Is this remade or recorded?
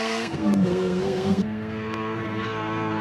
remade